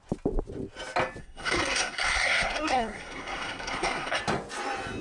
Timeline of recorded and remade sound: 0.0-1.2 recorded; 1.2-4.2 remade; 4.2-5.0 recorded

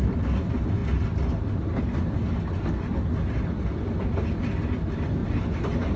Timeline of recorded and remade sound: 0.0-5.2 recorded; 5.2-6.0 remade

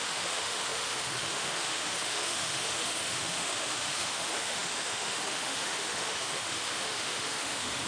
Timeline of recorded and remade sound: 0.0-7.9 remade

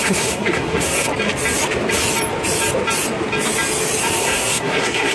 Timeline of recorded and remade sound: 0.0-1.1 remade; 1.1-4.2 recorded; 4.2-5.1 remade